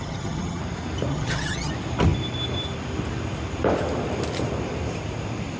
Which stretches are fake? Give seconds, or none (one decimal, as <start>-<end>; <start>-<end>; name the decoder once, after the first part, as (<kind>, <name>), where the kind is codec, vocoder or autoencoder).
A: 0.0-0.6 (vocoder, HiFi-GAN); 1.1-1.7